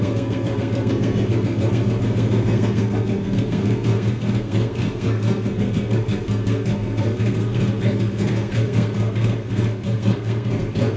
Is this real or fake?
fake